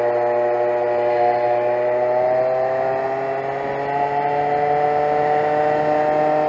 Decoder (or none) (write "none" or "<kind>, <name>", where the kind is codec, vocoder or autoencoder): none